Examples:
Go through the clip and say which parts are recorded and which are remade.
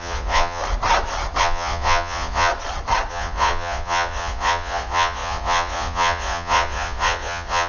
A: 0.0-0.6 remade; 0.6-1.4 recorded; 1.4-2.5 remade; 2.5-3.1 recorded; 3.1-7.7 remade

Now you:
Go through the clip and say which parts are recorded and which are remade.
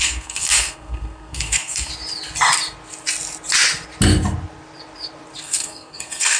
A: 0.0-1.9 remade; 1.9-5.4 recorded; 5.4-6.4 remade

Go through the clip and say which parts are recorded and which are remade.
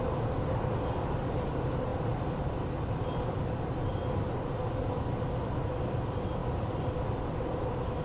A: 0.0-8.0 recorded